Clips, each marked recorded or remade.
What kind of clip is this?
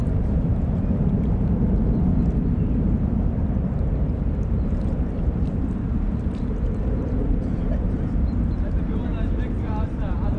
remade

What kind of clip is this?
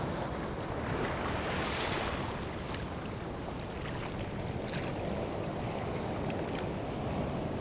recorded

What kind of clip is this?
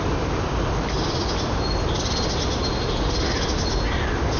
recorded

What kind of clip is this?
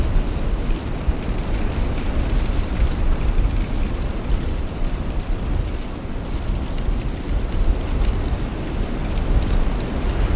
recorded